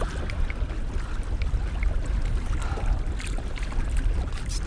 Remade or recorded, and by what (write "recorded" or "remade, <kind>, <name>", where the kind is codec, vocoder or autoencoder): recorded